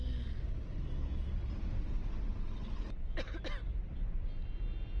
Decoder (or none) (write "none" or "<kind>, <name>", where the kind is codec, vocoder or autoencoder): none